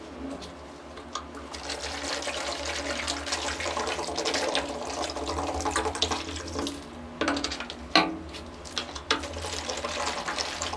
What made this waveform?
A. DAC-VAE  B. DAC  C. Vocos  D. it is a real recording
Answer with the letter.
D